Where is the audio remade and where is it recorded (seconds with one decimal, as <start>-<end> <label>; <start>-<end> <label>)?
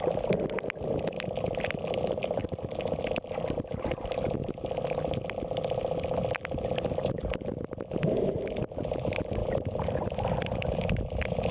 0.0-11.5 recorded